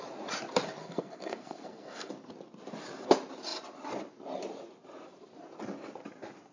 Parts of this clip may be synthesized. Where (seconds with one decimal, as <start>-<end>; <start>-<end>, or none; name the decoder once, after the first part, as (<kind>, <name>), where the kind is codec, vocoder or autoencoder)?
0.8-2.1 (codec, SNAC)